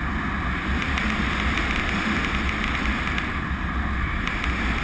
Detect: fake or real real